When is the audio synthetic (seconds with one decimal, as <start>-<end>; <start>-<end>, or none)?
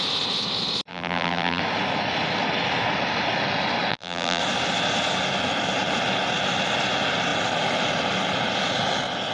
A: 0.9-1.6; 3.9-4.4